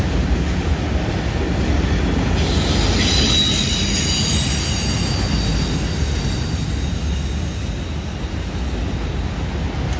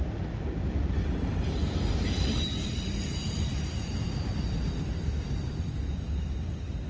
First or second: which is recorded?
first